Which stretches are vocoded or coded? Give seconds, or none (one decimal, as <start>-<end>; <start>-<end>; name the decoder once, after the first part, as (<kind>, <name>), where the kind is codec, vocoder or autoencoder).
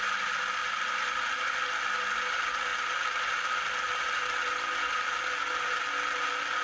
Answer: none